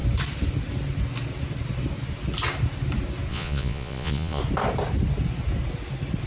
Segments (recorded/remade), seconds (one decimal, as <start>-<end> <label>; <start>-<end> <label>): 0.0-3.3 recorded; 3.3-4.4 remade; 4.4-6.3 recorded